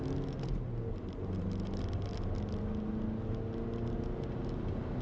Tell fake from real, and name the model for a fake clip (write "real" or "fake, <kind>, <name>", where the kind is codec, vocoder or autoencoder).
real